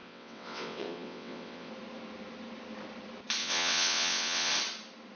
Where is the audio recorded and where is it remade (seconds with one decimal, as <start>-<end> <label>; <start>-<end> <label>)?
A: 0.0-1.7 remade; 1.7-3.4 recorded; 3.4-4.5 remade; 4.5-5.2 recorded